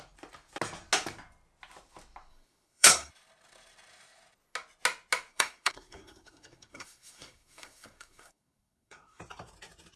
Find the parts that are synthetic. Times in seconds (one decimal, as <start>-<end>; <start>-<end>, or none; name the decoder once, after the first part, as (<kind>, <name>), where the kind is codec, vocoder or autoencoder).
2.3-3.1 (codec, SNAC); 5.3-9.2